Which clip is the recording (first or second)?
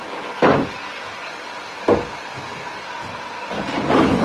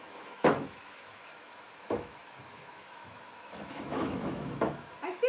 first